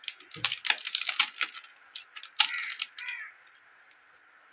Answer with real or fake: real